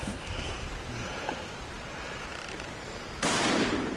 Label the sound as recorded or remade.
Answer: remade